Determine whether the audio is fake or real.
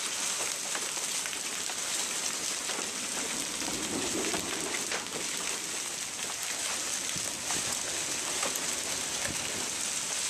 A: real